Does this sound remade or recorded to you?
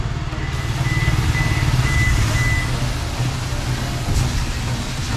recorded